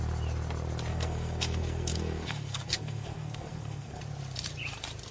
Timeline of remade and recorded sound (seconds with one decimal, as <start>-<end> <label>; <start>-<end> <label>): 0.0-0.9 recorded; 0.9-4.0 remade; 4.0-5.1 recorded